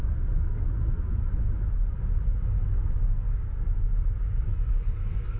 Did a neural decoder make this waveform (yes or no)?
no